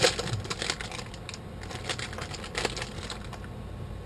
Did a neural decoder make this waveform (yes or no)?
no